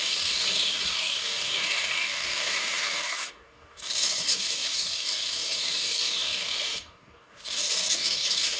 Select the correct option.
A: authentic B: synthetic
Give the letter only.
B